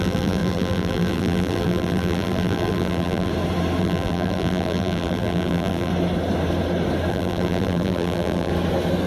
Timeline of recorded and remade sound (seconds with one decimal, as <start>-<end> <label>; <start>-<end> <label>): 0.0-3.3 remade; 3.3-3.8 recorded; 3.8-5.9 remade; 5.9-7.1 recorded; 7.1-8.5 remade; 8.5-9.1 recorded